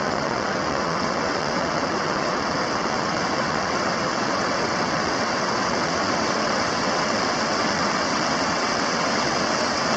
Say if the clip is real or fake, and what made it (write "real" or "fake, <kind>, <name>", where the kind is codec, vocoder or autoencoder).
fake, vocoder, WaveNeXt